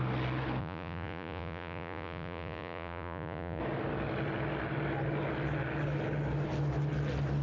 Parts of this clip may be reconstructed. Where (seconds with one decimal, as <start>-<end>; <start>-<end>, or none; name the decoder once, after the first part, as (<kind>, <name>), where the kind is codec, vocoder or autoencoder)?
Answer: 0.6-3.6 (vocoder, Vocos)